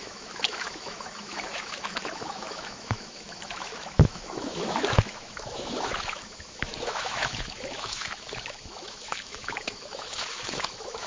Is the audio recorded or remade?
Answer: remade